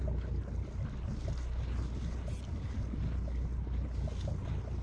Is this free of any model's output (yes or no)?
yes